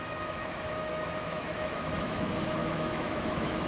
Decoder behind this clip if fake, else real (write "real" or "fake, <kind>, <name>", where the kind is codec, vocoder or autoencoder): fake, autoencoder, DAC-VAE